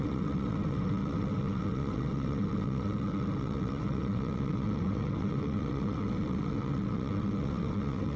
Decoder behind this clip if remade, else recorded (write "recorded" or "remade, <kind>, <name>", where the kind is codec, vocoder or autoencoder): remade, vocoder, WaveNeXt